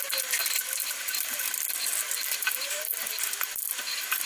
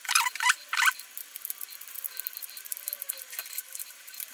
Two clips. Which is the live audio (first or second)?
first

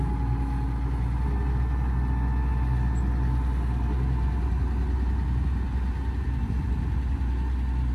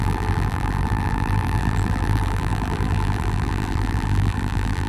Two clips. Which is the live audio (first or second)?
first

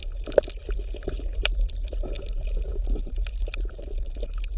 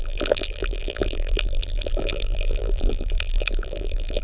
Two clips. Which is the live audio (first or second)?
first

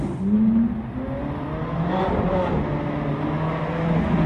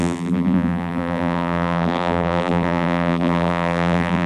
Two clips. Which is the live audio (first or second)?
first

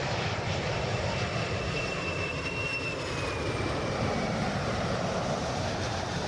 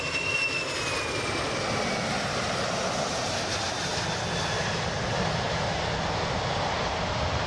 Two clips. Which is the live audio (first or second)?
second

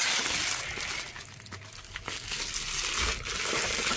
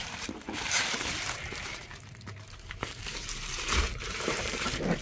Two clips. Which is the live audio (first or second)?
first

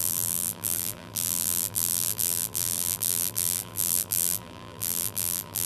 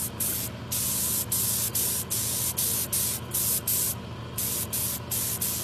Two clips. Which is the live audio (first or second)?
second